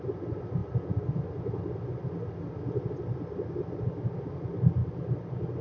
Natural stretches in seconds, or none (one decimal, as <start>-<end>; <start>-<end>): 0.0-5.6